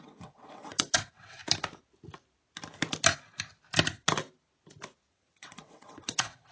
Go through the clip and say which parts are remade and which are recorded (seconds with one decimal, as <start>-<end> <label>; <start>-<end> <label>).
0.0-1.4 remade; 1.4-5.1 recorded; 5.1-6.5 remade